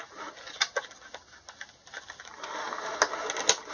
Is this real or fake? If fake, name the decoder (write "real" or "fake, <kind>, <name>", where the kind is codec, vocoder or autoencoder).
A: real